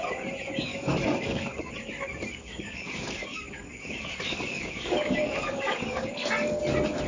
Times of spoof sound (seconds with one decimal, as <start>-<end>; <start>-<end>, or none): 0.7-1.7; 2.3-6.6